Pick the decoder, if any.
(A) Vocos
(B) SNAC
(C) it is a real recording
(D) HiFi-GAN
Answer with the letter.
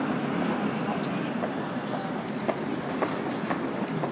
C